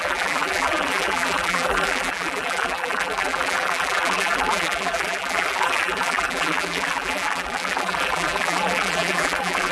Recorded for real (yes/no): no